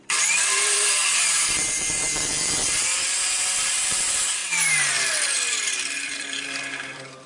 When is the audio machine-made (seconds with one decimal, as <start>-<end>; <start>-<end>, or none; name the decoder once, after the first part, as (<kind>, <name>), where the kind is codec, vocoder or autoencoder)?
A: 0.0-4.4 (vocoder, BigVGAN v2); 5.3-7.3